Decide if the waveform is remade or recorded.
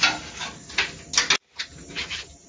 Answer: recorded